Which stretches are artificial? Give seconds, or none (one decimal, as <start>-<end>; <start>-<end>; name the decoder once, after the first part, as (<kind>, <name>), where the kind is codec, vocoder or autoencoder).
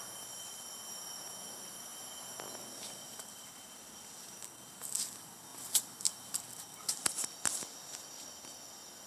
none